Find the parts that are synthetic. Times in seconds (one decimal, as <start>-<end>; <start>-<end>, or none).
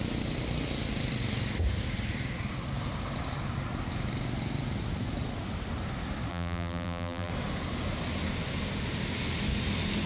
6.3-7.3